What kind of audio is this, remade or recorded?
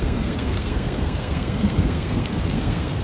remade